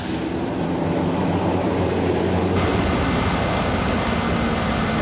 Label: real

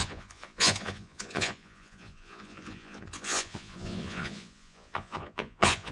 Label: fake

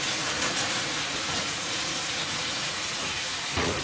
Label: fake